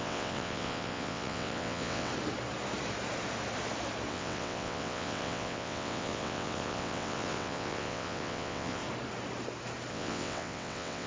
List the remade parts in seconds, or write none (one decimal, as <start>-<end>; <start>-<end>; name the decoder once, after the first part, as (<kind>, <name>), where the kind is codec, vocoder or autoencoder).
0.0-2.1 (vocoder, WaveNeXt); 4.1-8.8; 9.9-11.1